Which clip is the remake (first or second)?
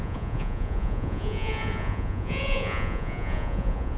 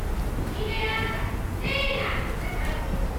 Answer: first